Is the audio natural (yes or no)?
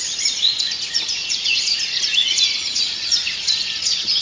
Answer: no